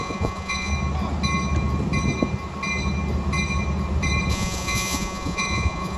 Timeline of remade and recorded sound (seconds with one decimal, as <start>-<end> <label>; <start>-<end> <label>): 0.0-0.7 remade; 0.7-4.3 recorded; 4.3-6.0 remade